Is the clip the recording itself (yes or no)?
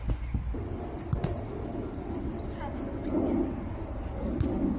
yes